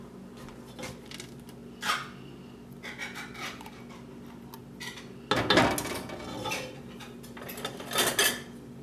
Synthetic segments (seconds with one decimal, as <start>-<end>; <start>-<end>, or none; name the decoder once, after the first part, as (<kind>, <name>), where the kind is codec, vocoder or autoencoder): none